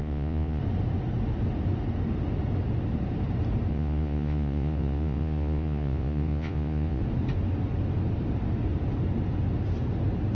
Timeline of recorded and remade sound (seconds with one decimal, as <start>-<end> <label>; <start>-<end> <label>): 0.0-0.6 remade; 0.6-3.7 recorded; 3.7-7.0 remade; 7.0-10.3 recorded